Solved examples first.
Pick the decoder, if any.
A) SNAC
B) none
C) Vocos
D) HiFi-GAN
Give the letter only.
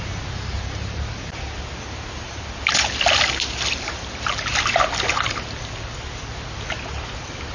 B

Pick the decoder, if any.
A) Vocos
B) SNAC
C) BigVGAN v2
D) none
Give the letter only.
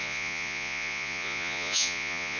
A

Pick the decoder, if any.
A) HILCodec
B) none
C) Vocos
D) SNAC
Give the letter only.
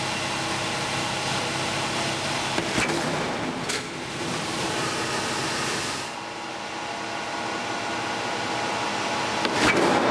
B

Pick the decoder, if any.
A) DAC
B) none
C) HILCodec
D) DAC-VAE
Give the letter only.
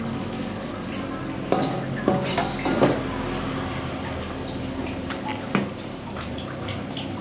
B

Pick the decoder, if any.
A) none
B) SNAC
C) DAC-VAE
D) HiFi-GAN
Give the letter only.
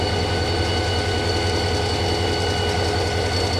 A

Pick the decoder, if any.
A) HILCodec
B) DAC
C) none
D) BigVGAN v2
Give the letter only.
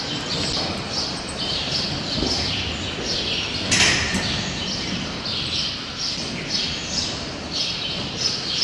C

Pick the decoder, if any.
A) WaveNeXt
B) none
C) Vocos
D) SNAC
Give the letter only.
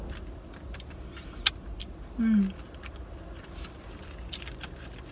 B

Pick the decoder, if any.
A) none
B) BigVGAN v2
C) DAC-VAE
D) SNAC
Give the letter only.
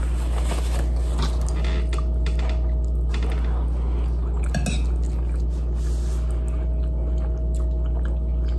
A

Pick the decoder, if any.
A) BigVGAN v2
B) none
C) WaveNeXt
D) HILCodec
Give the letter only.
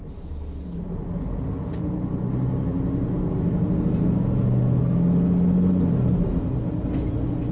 B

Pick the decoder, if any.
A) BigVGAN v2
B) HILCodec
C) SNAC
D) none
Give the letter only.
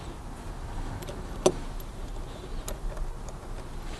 D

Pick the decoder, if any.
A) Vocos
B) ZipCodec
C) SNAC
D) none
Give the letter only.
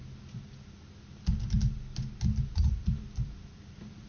D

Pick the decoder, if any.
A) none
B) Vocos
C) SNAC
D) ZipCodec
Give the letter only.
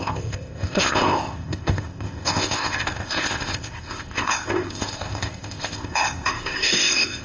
D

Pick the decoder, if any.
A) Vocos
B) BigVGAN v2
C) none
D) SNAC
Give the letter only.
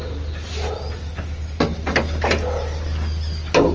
C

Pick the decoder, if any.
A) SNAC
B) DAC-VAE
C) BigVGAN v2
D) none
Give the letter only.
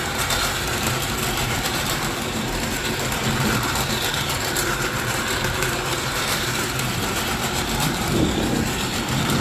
C